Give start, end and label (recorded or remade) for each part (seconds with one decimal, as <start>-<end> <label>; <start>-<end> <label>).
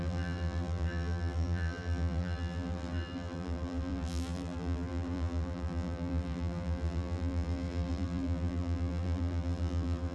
0.0-10.1 remade